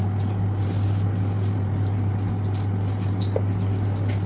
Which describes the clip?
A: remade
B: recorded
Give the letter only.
B